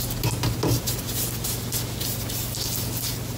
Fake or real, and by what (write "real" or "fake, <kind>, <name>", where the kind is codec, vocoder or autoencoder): real